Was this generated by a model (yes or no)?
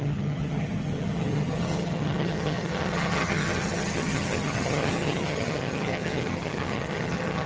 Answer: yes